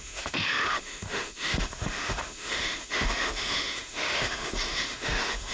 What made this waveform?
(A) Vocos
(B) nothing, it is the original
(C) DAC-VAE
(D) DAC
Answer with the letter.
C